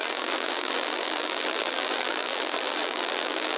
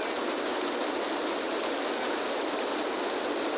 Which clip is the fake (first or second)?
first